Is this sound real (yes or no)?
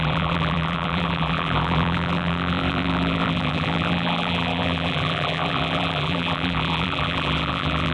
no